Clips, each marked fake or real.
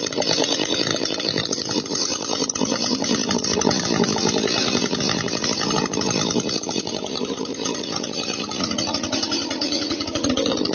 fake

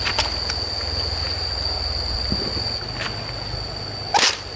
real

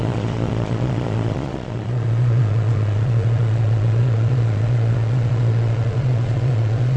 fake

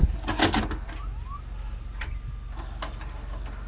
real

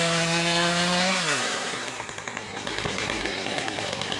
fake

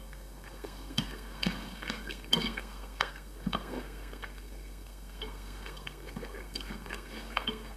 fake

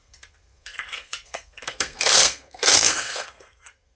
fake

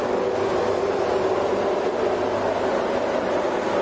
real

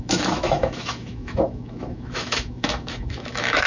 fake